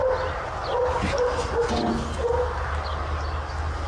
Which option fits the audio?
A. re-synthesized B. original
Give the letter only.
B